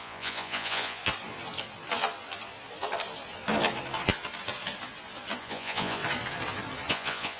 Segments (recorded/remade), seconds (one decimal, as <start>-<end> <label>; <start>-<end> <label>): 0.0-1.0 remade; 1.0-5.4 recorded; 5.4-6.0 remade; 6.0-6.9 recorded; 6.9-7.4 remade